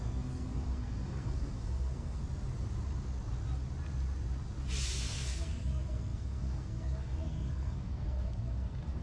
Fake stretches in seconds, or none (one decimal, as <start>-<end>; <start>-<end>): 0.0-2.2; 5.0-9.0